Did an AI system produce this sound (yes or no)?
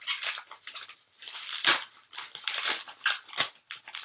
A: no